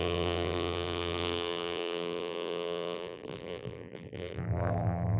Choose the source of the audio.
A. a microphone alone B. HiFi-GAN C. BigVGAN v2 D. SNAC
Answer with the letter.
C